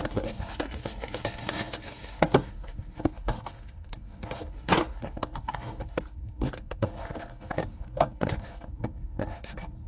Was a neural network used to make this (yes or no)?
yes